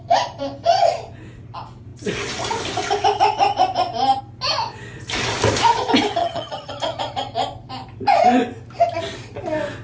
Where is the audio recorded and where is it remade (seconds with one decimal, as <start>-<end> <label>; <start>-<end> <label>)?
0.0-6.2 recorded; 6.2-6.7 remade; 6.7-9.8 recorded